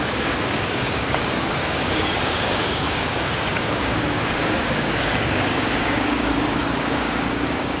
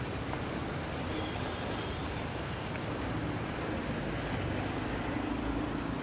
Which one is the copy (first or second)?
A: first